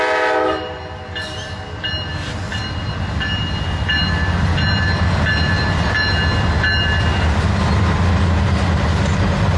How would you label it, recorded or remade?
recorded